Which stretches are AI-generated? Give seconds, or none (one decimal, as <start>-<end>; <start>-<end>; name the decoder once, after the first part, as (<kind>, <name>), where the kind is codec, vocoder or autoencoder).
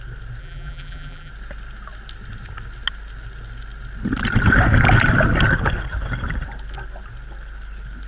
0.4-1.3 (vocoder, BigVGAN v2)